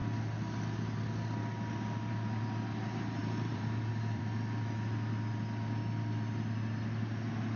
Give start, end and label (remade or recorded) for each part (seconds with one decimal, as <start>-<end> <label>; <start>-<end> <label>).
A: 0.0-3.2 recorded; 3.2-4.2 remade; 4.2-7.6 recorded